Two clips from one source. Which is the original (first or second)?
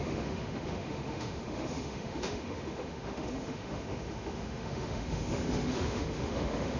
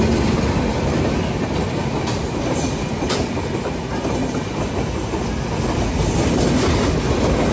second